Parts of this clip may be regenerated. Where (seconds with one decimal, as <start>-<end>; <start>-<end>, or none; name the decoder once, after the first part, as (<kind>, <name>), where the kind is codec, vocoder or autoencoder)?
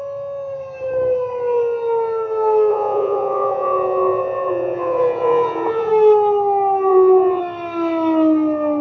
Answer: 2.7-5.9 (vocoder, Vocos); 6.9-7.4